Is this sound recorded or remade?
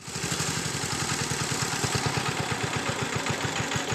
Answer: recorded